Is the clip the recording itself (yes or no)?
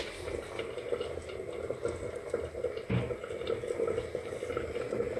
yes